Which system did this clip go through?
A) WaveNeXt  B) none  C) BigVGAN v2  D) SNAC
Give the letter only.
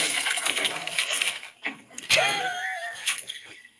D